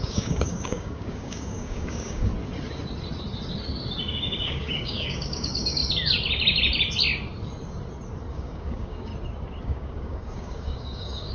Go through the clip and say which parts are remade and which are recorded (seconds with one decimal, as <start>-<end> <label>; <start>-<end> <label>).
0.0-2.3 remade; 2.3-4.1 recorded; 4.1-5.8 remade; 5.8-8.3 recorded; 8.3-9.1 remade; 9.1-9.6 recorded; 9.6-11.3 remade